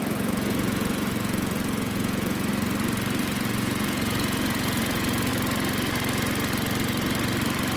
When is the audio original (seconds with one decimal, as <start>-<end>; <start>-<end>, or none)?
2.5-3.2; 5.3-7.8